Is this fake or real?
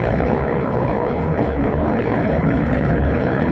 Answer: fake